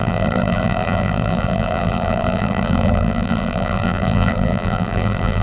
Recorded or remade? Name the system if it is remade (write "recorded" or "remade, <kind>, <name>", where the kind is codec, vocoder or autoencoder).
remade, vocoder, BigVGAN v2